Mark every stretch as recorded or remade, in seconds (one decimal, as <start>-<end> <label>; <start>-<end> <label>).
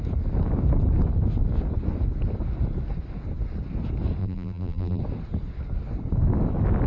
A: 0.0-4.2 recorded; 4.2-5.0 remade; 5.0-6.9 recorded